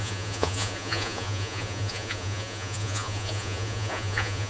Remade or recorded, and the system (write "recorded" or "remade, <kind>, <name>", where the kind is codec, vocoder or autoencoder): remade, vocoder, Vocos